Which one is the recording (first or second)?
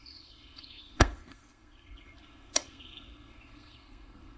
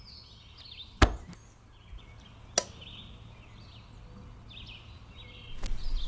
second